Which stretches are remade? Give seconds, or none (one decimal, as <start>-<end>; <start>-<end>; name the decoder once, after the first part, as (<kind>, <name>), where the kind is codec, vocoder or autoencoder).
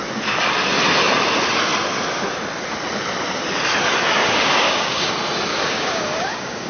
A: 4.2-5.1 (codec, DAC); 5.5-6.7